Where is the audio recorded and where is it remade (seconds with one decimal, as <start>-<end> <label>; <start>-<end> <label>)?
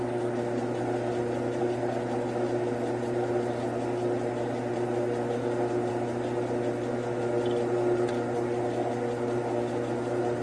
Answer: 0.0-10.4 recorded